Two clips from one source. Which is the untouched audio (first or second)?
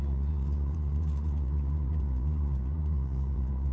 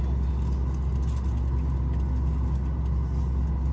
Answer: second